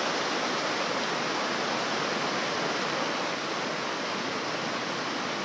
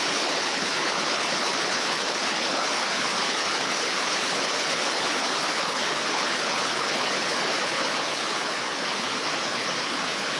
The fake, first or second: second